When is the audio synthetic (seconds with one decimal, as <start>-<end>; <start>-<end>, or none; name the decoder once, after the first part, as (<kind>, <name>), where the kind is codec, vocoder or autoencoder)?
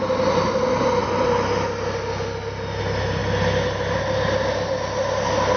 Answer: none